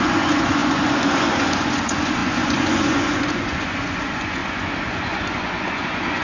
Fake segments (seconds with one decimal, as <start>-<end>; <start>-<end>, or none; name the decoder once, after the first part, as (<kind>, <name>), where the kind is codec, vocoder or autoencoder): 0.0-6.2 (vocoder, Vocos)

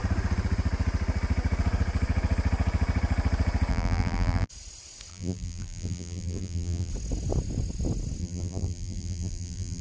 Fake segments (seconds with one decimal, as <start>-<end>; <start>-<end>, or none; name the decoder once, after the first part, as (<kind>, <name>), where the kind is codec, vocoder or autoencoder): 3.7-4.5 (vocoder, BigVGAN v2); 5.1-6.9; 8.2-9.8

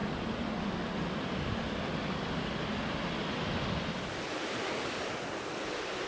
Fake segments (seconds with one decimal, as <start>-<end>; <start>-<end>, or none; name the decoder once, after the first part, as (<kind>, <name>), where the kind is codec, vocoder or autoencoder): none

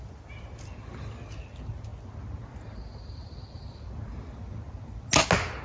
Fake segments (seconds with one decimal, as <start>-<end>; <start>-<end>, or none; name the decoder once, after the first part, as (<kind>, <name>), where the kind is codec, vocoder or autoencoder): none

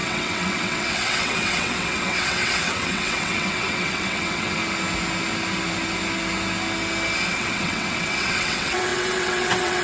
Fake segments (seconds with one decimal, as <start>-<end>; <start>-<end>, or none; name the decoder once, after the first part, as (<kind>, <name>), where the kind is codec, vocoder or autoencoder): 0.0-4.6 (vocoder, WaveNeXt); 7.3-9.8